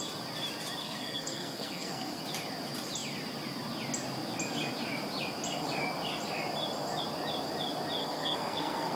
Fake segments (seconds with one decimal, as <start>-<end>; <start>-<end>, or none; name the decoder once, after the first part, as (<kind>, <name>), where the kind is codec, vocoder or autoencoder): 0.8-2.2 (codec, SNAC); 8.0-9.0